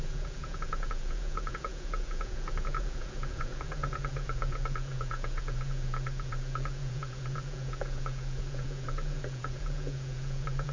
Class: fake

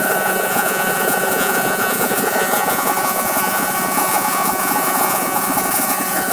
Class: fake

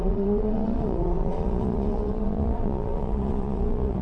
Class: fake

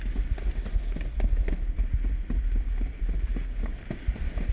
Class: real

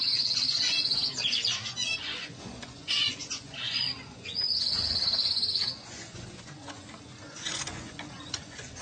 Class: fake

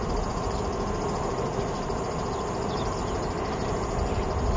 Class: real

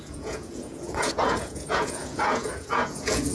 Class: fake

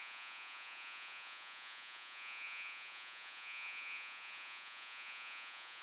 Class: fake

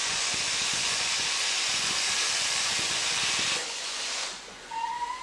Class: fake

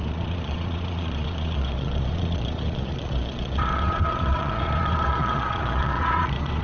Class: fake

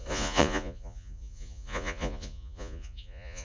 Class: fake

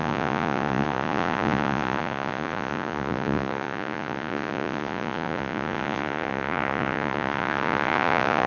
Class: fake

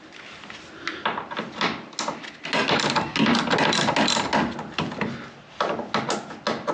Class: real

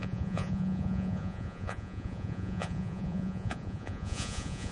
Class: fake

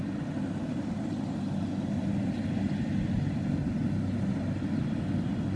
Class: real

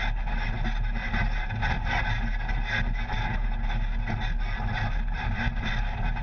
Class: real